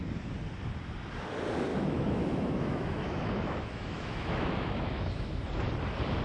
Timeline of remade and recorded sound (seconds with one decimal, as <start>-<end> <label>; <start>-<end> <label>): 0.0-1.7 recorded; 1.7-5.4 remade; 5.4-6.2 recorded